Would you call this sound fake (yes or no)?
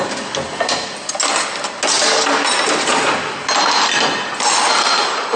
no